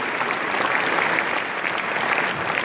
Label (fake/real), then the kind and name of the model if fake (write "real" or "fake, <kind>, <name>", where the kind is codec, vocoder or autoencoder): fake, vocoder, BigVGAN v2